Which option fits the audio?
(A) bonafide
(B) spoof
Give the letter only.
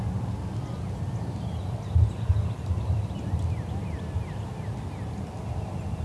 A